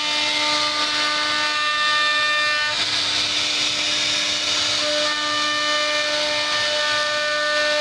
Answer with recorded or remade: recorded